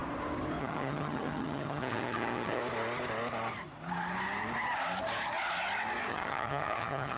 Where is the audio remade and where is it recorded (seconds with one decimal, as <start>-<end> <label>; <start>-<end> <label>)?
0.0-0.6 recorded; 0.6-2.6 remade; 2.6-6.1 recorded; 6.1-7.2 remade

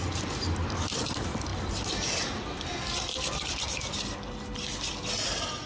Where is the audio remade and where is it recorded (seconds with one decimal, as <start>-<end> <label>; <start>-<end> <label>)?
0.0-5.7 recorded

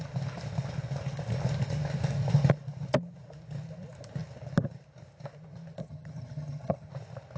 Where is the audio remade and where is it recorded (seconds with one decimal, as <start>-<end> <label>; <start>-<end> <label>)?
0.0-5.8 recorded; 5.8-6.9 remade; 6.9-7.4 recorded

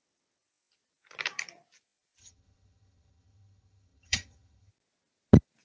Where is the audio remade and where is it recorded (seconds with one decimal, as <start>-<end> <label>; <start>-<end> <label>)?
0.0-2.2 recorded; 2.2-4.7 remade; 4.7-5.6 recorded

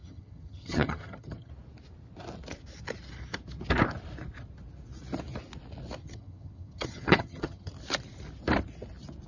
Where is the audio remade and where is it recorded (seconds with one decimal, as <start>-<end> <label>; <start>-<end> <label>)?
0.0-1.5 remade; 1.5-6.0 recorded; 6.0-7.7 remade; 7.7-9.3 recorded

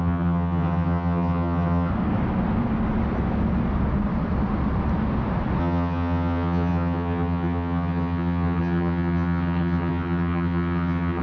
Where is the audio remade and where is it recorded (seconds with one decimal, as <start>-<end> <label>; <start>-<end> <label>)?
0.0-1.9 remade; 1.9-5.6 recorded; 5.6-11.2 remade